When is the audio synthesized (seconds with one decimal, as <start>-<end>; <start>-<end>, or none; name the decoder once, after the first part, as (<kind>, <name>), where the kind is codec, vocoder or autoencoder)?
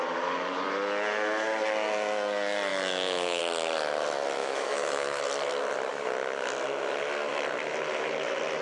2.7-3.4 (autoencoder, DAC-VAE); 4.4-5.2